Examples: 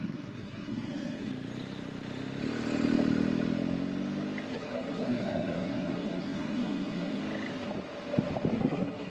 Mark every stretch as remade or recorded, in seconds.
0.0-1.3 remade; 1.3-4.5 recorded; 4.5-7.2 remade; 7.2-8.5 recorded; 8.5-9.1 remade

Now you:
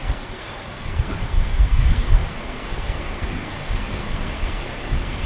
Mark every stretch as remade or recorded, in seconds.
0.0-5.3 remade

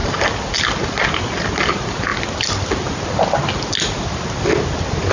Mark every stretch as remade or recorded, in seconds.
0.0-5.1 recorded

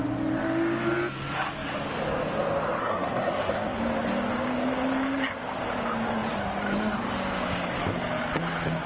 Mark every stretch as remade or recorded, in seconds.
0.0-2.8 recorded; 2.8-3.8 remade; 3.8-8.9 recorded

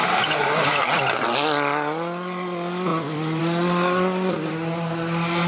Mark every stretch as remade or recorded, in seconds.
0.0-5.5 recorded

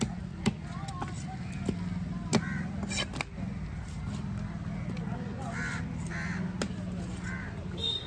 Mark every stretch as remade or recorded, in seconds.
0.0-8.1 recorded

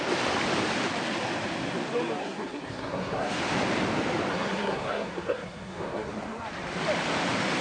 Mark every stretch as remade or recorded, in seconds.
0.0-2.2 recorded; 2.2-3.4 remade; 3.4-4.3 recorded; 4.3-6.1 remade; 6.1-7.6 recorded